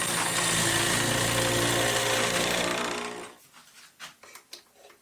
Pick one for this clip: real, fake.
real